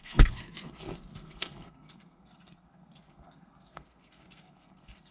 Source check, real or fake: fake